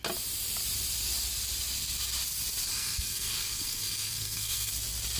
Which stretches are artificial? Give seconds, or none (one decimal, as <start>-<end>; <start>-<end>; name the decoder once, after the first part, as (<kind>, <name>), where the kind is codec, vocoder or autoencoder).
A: 2.7-4.7 (codec, SNAC)